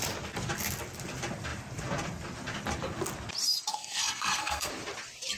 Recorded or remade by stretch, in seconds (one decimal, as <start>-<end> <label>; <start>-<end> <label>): 0.0-3.7 recorded; 3.7-4.7 remade; 4.7-5.4 recorded